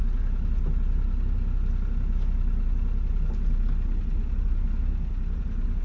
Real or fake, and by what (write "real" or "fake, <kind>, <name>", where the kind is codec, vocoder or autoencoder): real